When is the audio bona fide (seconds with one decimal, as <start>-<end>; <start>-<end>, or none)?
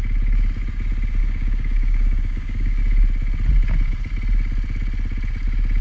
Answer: 0.0-1.2; 2.8-5.8